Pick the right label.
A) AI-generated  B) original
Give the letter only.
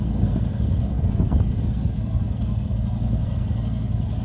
A